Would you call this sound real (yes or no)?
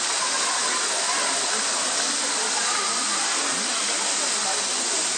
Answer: yes